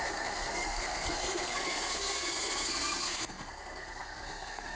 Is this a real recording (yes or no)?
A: no